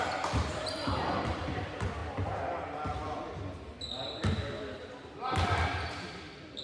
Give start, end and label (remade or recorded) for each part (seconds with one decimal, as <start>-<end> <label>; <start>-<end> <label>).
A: 0.0-2.0 remade; 2.0-4.6 recorded; 4.6-6.6 remade